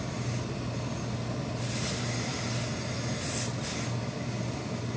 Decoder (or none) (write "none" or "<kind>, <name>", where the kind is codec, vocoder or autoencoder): none